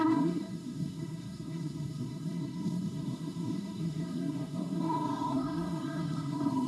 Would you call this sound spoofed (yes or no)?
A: yes